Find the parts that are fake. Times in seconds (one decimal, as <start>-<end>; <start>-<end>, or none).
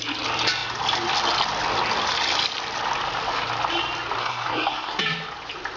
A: 4.2-5.0